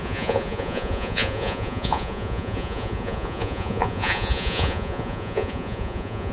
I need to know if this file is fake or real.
fake